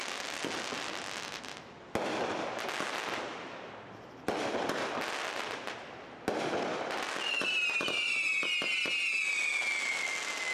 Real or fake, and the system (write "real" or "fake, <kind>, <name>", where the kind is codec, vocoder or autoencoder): real